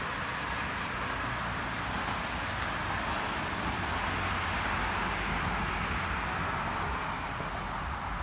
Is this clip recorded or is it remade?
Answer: recorded